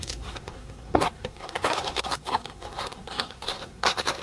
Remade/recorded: remade